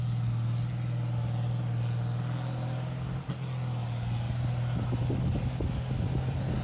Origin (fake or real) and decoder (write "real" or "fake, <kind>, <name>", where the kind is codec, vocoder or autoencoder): real